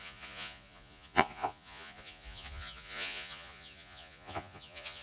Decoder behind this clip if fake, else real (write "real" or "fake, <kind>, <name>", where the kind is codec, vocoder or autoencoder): fake, vocoder, Vocos